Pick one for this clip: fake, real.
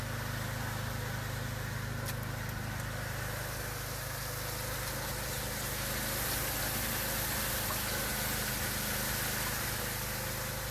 real